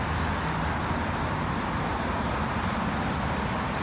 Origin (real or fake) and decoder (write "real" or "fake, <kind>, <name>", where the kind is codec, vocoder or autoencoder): real